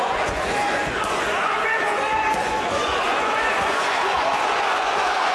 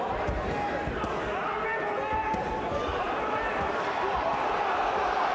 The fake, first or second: first